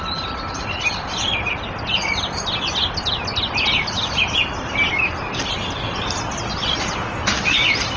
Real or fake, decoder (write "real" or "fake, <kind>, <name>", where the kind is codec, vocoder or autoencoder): real